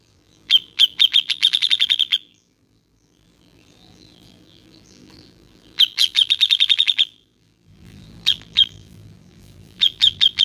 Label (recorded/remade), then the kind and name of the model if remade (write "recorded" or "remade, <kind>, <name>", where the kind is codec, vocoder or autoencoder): remade, vocoder, BigVGAN v2